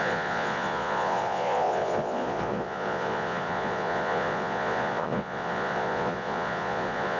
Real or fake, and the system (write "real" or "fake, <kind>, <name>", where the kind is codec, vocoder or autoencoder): fake, vocoder, Vocos